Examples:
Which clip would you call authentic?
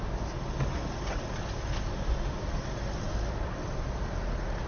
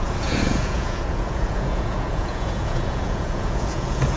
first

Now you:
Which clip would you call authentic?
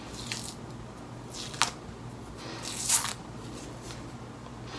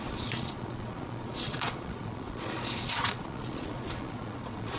first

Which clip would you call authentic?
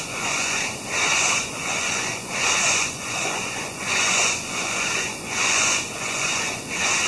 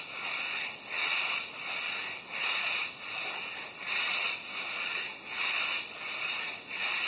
second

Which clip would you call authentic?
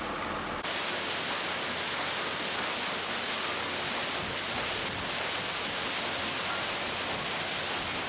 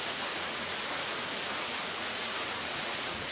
first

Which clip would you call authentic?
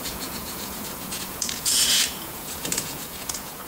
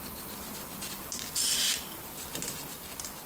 second